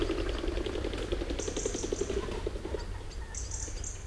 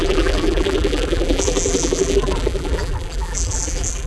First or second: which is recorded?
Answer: first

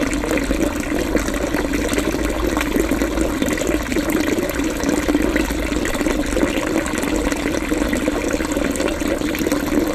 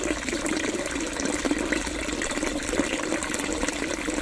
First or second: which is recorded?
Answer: first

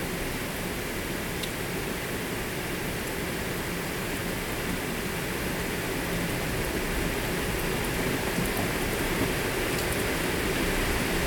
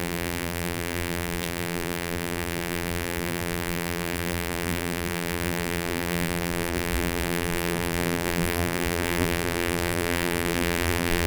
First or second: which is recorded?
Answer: first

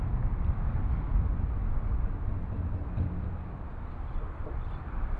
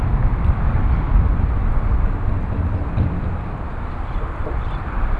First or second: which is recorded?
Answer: first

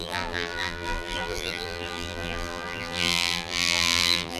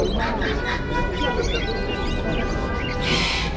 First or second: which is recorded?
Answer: second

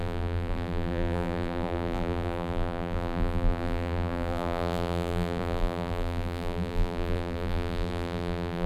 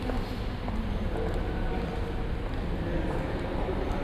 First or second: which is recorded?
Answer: second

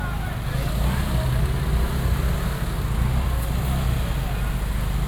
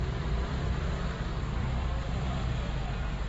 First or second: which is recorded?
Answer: first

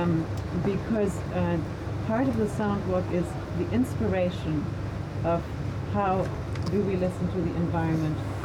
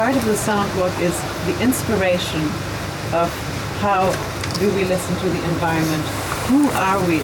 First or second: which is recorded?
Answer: first